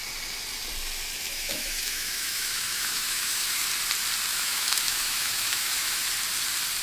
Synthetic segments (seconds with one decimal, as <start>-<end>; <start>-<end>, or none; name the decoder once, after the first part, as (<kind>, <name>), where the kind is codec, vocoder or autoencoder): 1.3-3.6 (autoencoder, DAC-VAE); 4.3-6.1